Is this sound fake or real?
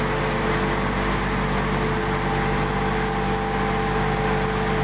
real